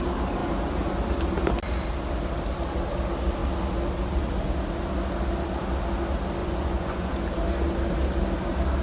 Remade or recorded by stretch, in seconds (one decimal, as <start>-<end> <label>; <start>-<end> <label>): 0.0-6.4 recorded; 6.4-7.1 remade; 7.1-8.8 recorded